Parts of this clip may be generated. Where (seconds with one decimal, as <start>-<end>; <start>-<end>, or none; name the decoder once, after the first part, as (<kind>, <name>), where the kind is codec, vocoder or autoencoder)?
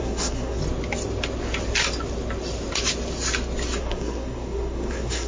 0.0-0.6 (codec, SNAC); 3.8-5.3